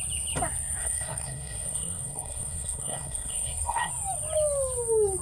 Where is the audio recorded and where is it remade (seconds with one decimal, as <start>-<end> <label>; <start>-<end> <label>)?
0.0-0.8 recorded; 0.8-3.9 remade; 3.9-5.2 recorded